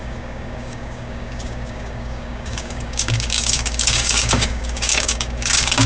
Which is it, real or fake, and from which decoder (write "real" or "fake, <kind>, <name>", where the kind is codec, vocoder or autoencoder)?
fake, codec, DAC